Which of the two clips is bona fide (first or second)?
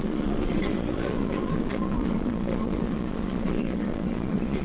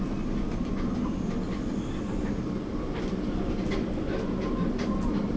second